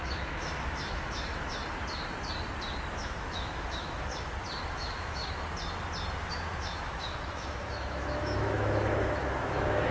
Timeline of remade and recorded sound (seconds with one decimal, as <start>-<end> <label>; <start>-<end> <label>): 0.0-1.6 remade; 1.6-2.9 recorded; 2.9-4.1 remade; 4.1-4.7 recorded; 4.7-5.2 remade; 5.2-6.3 recorded; 6.3-9.9 remade